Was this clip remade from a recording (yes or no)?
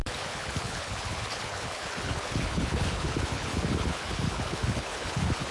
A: yes